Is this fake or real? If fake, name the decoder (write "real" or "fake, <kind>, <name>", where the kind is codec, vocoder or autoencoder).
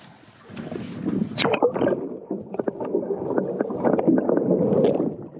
real